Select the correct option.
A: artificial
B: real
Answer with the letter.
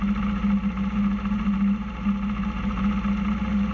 B